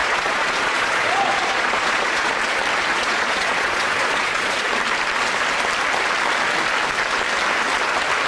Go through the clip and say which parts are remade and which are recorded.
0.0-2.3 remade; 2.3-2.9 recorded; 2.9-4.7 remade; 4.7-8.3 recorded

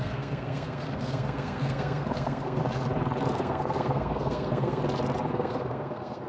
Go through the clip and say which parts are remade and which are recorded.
0.0-2.6 remade; 2.6-3.3 recorded; 3.3-4.8 remade; 4.8-5.3 recorded; 5.3-6.3 remade